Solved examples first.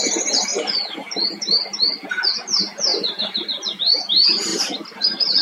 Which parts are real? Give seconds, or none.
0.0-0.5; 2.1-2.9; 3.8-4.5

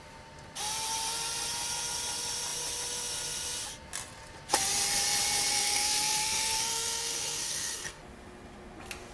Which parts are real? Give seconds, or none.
0.0-5.5; 8.0-9.1